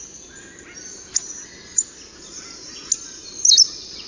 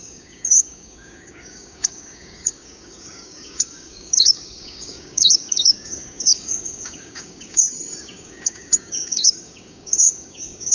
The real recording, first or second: first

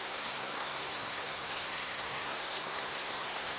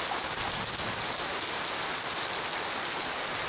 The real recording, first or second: second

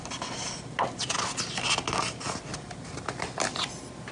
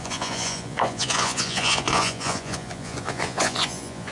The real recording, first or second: first